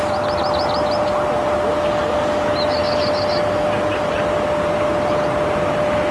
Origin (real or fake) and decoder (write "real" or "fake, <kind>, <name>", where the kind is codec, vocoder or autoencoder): real